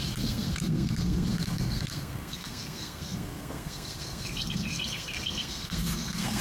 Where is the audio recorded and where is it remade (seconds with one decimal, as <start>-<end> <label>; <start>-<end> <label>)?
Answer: 0.0-6.4 remade